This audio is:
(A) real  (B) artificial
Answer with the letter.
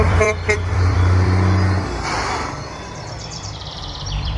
B